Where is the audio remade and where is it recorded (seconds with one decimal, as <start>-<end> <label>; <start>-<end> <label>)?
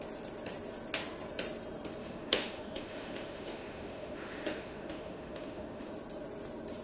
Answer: 0.0-2.0 recorded; 2.0-5.9 remade; 5.9-6.8 recorded